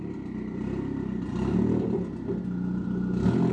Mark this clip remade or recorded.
recorded